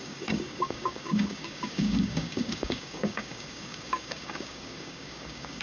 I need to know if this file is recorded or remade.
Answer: remade